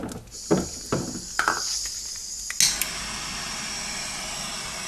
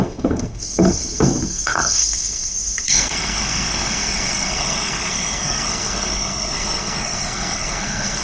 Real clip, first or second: first